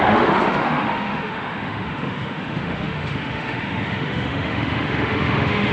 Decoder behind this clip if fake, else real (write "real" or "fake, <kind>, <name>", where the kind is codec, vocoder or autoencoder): fake, autoencoder, DAC-VAE